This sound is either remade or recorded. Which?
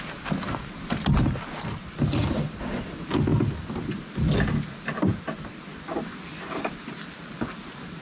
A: recorded